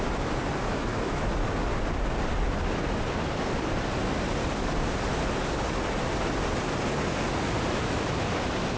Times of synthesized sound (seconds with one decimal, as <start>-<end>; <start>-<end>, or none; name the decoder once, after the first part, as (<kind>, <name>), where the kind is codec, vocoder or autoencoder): 0.6-1.3 (autoencoder, DAC-VAE)